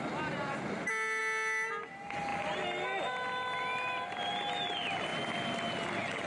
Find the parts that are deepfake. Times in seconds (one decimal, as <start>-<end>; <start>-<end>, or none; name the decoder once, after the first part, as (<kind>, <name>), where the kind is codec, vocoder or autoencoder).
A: none